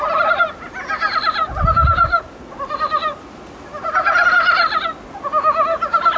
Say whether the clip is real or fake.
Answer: real